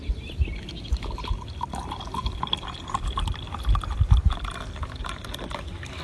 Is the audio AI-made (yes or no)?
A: no